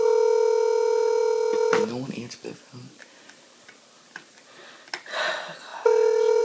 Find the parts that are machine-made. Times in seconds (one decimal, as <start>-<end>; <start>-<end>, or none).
none